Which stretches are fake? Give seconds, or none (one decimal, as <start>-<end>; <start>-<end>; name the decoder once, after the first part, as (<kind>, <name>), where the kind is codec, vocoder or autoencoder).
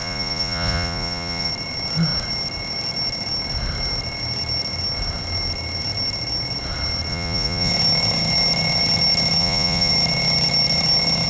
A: 0.0-1.5 (vocoder, Vocos); 7.1-7.7; 9.4-9.9